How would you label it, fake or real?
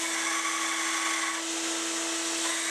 real